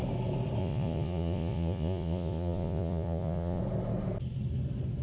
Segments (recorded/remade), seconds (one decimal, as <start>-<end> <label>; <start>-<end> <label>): 0.0-0.6 recorded; 0.6-3.6 remade; 3.6-5.0 recorded